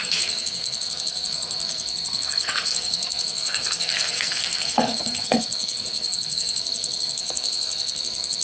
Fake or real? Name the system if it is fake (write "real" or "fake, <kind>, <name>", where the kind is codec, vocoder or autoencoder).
fake, codec, SNAC